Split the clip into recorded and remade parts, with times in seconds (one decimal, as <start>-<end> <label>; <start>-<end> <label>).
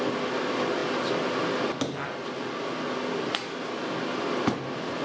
0.0-5.0 recorded